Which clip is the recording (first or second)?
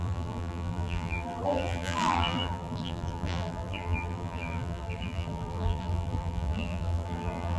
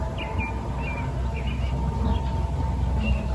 second